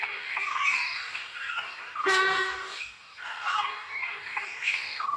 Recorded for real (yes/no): no